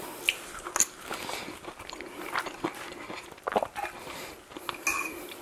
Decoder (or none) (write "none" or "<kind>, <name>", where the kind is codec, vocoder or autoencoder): none